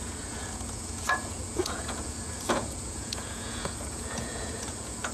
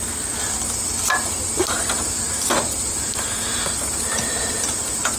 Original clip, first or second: second